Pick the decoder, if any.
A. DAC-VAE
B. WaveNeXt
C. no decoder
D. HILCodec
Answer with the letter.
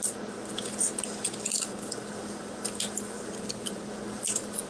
C